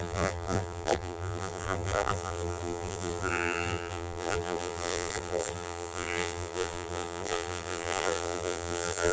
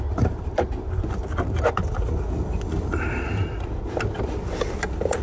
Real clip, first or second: second